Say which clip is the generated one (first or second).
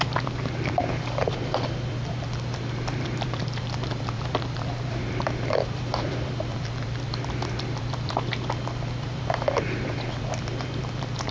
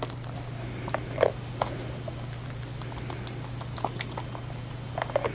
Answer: first